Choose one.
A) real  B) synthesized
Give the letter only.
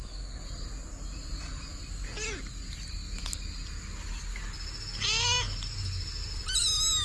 A